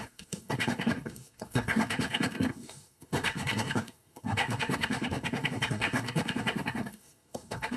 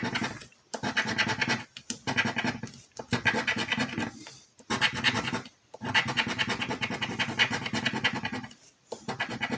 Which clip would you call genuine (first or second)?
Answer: second